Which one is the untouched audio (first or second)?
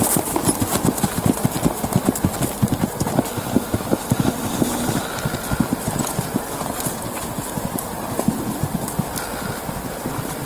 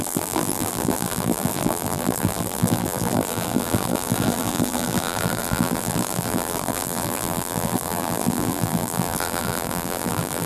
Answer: first